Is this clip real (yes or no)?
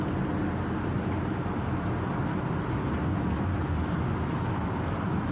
yes